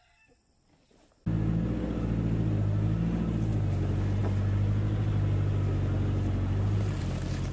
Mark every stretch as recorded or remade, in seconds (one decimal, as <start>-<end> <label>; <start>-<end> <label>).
0.0-7.5 recorded

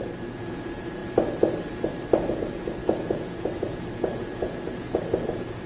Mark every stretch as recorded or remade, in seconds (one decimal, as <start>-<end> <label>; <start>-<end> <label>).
0.0-1.0 remade; 1.0-2.3 recorded; 2.3-5.7 remade

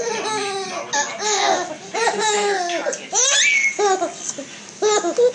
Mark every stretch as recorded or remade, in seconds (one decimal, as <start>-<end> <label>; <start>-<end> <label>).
0.0-5.3 recorded

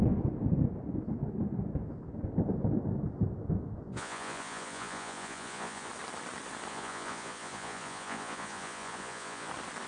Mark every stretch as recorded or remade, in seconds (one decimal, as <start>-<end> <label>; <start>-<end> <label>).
0.0-3.9 recorded; 3.9-5.9 remade; 5.9-6.7 recorded; 6.7-9.5 remade; 9.5-9.9 recorded

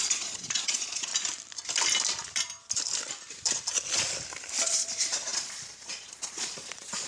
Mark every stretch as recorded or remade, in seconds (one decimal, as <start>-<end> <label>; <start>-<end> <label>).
0.0-1.1 remade; 1.1-4.6 recorded; 4.6-7.1 remade

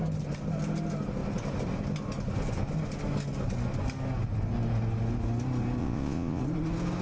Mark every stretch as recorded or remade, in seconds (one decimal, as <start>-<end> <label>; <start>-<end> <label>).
0.0-5.8 recorded; 5.8-6.4 remade; 6.4-7.0 recorded